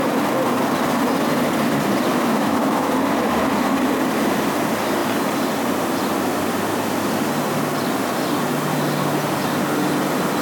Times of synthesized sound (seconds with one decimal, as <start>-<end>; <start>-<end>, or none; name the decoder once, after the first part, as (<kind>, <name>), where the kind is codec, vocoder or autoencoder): 2.1-2.9 (autoencoder, DAC-VAE)